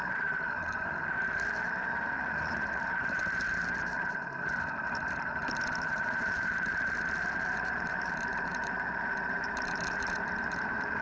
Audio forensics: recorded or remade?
remade